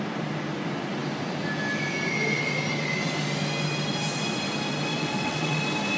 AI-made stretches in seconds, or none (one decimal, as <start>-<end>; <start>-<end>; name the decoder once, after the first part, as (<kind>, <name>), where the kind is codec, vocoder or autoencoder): 4.9-5.6 (vocoder, WaveNeXt)